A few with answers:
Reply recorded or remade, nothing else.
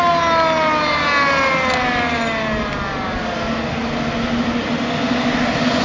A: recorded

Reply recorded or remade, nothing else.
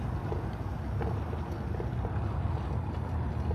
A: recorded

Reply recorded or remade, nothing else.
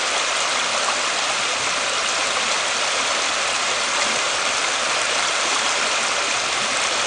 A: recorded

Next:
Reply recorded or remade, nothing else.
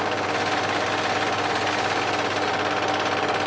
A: recorded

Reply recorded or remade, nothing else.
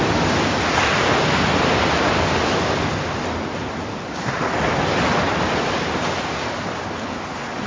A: recorded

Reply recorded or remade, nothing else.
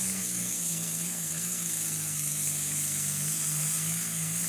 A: remade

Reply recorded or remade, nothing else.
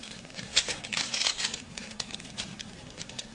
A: remade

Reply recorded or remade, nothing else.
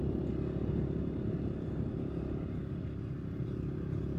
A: recorded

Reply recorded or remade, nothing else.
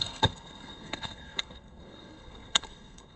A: remade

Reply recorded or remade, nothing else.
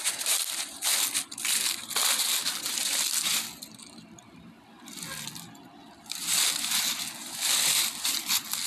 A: recorded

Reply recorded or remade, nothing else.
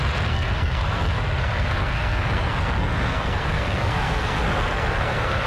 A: remade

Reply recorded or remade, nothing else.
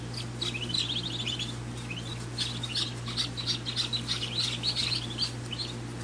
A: recorded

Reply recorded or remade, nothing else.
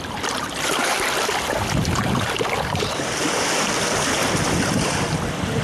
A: recorded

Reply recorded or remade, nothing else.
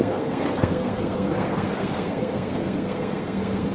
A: remade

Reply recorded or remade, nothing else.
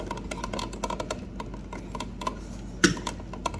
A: recorded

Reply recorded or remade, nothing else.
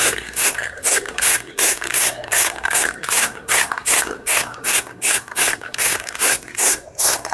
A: remade